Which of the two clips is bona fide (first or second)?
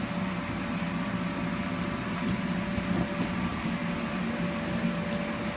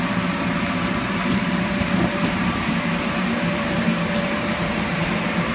first